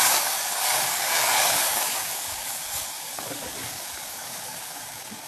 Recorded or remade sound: remade